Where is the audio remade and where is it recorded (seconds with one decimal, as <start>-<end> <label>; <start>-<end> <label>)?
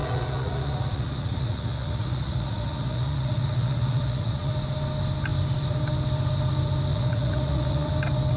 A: 0.0-4.5 remade; 4.5-6.9 recorded; 6.9-7.9 remade; 7.9-8.4 recorded